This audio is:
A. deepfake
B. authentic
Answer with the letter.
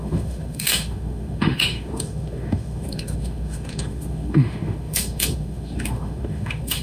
A